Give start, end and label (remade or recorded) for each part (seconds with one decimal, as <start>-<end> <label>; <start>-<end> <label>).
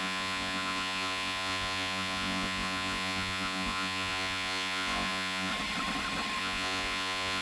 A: 0.0-5.5 remade; 5.5-6.4 recorded; 6.4-7.4 remade